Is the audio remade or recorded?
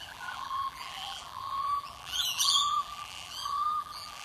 remade